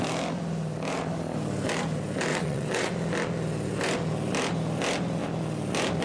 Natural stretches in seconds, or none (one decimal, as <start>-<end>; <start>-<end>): 0.0-2.3; 2.9-6.0